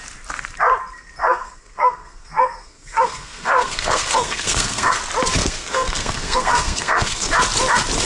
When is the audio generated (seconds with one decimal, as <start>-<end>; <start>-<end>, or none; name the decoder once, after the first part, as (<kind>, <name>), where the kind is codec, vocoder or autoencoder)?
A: 1.2-5.0 (codec, SNAC); 5.4-7.3

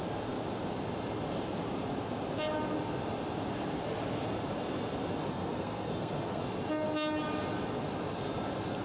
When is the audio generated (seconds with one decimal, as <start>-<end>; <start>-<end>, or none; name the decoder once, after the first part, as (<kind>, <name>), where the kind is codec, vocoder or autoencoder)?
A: 5.3-6.4 (codec, SNAC)

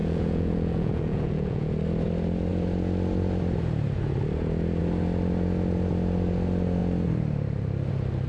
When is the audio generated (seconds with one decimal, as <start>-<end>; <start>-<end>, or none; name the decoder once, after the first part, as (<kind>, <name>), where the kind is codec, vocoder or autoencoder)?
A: 0.0-1.7 (vocoder, Vocos)

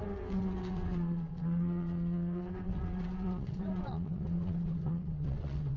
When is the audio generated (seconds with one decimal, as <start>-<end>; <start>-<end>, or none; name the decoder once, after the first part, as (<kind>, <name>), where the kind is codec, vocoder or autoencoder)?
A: 0.0-5.8 (vocoder, WaveNeXt)